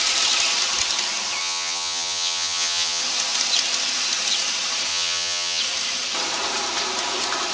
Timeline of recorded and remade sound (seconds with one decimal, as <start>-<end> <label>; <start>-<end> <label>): 0.0-1.4 recorded; 1.4-3.0 remade; 3.0-4.9 recorded; 4.9-5.6 remade; 5.6-7.5 recorded